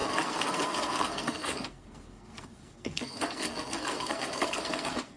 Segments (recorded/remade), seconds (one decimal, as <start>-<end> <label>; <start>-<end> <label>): 0.0-5.2 remade